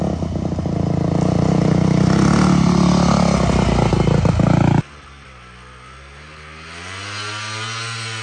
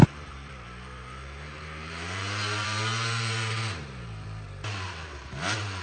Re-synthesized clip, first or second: second